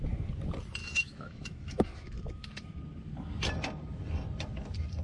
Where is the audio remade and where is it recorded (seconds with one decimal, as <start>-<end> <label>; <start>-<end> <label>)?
0.0-0.8 recorded; 0.8-2.8 remade; 2.8-5.0 recorded